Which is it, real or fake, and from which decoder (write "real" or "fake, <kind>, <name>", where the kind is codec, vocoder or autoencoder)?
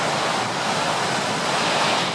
real